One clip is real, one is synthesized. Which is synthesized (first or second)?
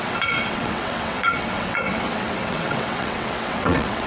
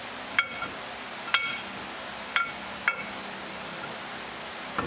first